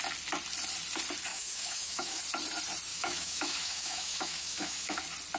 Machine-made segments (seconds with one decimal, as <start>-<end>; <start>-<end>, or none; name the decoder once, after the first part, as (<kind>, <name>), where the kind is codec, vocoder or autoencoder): 1.3-2.2 (autoencoder, DAC-VAE); 2.9-5.0